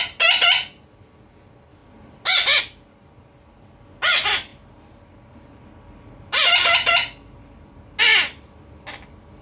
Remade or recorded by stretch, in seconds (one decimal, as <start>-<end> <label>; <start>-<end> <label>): 0.0-9.4 recorded

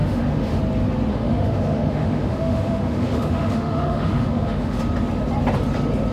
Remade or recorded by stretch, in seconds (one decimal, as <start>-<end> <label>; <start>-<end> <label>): 0.0-0.6 remade; 0.6-1.1 recorded; 1.1-4.8 remade; 4.8-6.1 recorded